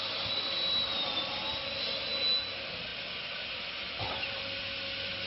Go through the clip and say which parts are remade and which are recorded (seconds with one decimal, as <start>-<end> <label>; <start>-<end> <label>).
0.0-5.3 recorded